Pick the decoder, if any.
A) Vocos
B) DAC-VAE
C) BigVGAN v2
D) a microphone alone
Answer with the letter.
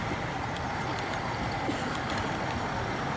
D